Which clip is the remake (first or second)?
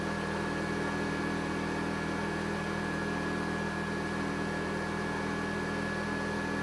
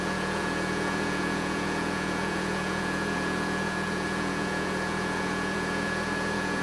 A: second